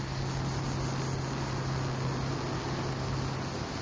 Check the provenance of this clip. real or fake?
real